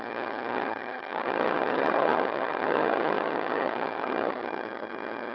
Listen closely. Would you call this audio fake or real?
fake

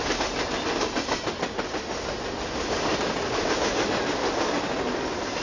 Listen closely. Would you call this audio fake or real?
real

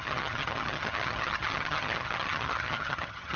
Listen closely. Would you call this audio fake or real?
fake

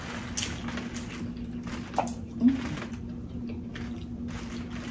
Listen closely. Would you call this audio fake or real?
real